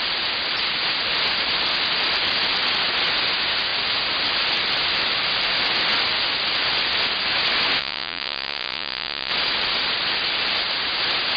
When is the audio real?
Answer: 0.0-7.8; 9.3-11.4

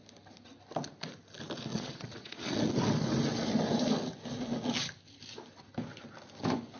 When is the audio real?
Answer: 0.0-1.7; 2.6-6.8

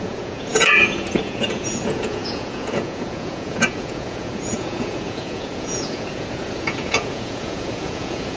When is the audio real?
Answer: none